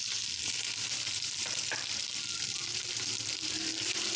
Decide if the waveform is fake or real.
fake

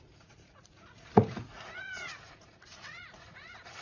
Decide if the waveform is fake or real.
fake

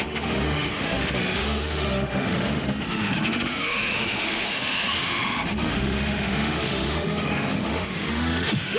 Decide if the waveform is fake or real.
fake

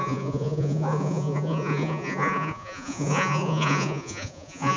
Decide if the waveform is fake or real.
fake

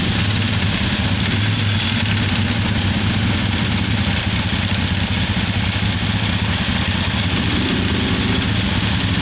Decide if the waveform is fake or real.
real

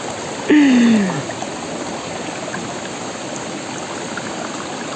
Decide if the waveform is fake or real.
real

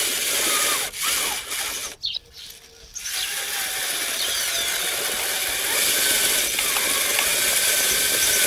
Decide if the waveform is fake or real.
real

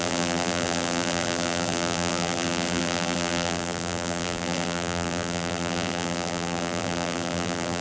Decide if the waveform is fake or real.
fake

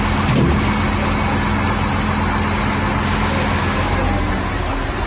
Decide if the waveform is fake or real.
real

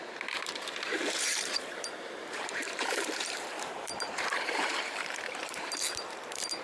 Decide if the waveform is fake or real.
fake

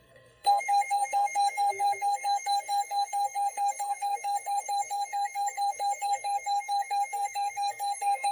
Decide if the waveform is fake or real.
fake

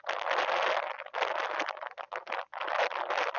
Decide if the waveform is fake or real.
real